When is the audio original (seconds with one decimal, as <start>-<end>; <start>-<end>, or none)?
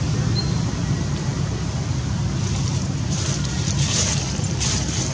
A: 0.0-5.1